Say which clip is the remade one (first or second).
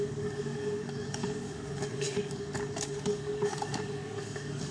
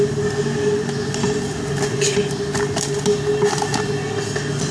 first